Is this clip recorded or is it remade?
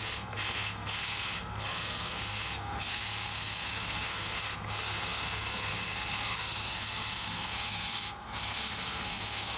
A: remade